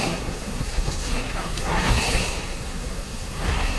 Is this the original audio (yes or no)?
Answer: no